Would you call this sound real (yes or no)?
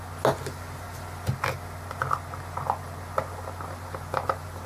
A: yes